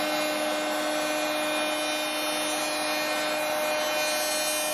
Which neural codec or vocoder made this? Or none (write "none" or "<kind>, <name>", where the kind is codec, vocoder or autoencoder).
none